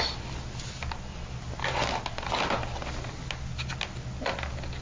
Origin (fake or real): real